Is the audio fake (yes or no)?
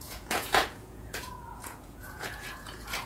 yes